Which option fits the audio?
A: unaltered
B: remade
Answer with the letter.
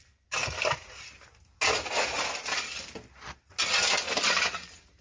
A